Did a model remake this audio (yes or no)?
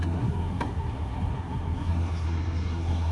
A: yes